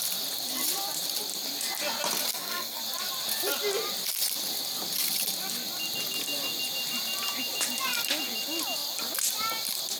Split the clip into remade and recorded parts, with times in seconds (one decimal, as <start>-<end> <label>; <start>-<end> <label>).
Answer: 0.0-2.3 recorded; 2.3-2.8 remade; 2.8-10.0 recorded